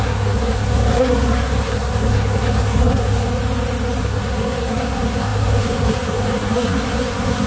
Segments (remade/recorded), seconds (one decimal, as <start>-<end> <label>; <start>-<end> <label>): 0.0-3.3 remade; 3.3-4.0 recorded; 4.0-7.5 remade

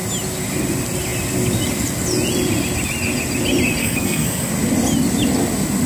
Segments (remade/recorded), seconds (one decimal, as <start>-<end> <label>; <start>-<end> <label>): 0.0-3.8 recorded; 3.8-4.5 remade; 4.5-5.9 recorded

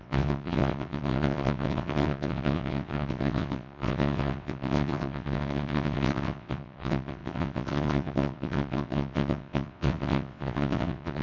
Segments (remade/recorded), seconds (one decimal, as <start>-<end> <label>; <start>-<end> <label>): 0.0-11.2 remade

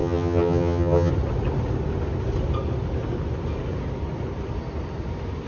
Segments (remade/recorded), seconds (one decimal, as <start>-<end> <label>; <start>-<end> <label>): 0.0-1.1 remade; 1.1-5.5 recorded

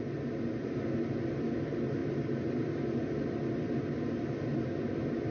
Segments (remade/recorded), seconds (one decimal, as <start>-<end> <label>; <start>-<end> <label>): 0.0-2.0 recorded; 2.0-4.8 remade; 4.8-5.3 recorded

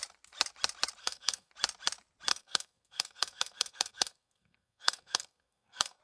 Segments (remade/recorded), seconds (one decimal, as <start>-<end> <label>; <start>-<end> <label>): 0.0-1.0 recorded; 1.0-1.5 remade; 1.5-2.3 recorded; 2.3-6.0 remade

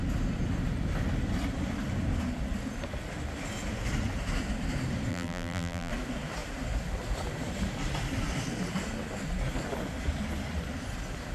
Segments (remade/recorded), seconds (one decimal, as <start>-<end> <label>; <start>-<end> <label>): 0.0-5.1 recorded; 5.1-5.9 remade; 5.9-11.3 recorded